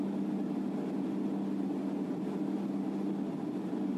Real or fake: real